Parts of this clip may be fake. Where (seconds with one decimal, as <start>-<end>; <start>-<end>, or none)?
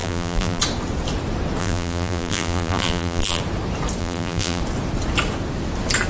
0.0-0.6; 1.6-3.4; 4.0-4.6